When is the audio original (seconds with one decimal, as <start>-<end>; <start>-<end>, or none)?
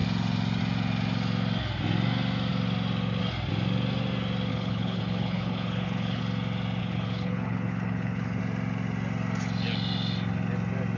0.0-4.5; 6.2-6.8; 8.4-11.0